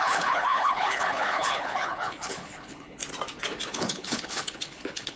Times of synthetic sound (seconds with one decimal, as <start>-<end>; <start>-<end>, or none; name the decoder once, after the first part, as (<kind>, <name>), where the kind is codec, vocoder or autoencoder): 0.0-3.0 (codec, HILCodec); 3.7-5.2